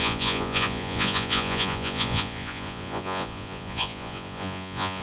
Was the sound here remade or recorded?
remade